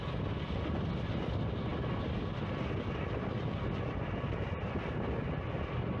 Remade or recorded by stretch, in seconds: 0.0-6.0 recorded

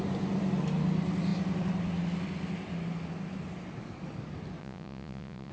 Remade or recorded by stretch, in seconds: 0.0-4.6 recorded; 4.6-5.5 remade

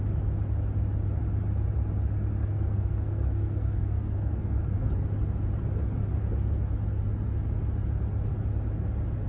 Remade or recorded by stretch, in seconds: 0.0-2.4 recorded; 2.4-4.9 remade; 4.9-9.3 recorded

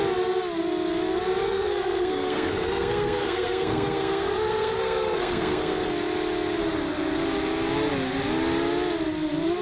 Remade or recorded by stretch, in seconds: 0.0-1.4 recorded; 1.4-5.9 remade; 5.9-9.6 recorded

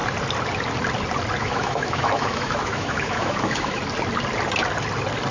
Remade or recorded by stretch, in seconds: 0.0-1.4 recorded; 1.4-3.8 remade; 3.8-5.3 recorded

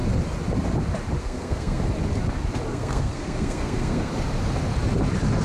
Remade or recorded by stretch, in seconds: 0.0-1.2 recorded; 1.2-1.8 remade; 1.8-2.7 recorded; 2.7-4.1 remade; 4.1-5.4 recorded

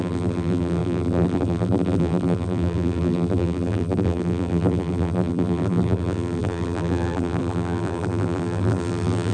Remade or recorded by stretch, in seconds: 0.0-9.3 remade

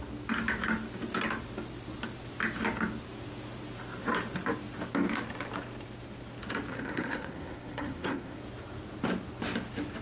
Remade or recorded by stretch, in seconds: 0.0-6.7 recorded; 6.7-8.4 remade; 8.4-10.0 recorded